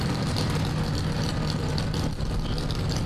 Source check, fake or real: real